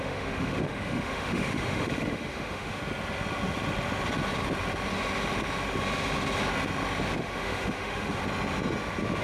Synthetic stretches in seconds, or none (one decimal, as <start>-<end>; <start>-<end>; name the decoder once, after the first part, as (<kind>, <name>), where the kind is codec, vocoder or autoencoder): 0.0-2.8 (autoencoder, DAC-VAE); 7.2-8.2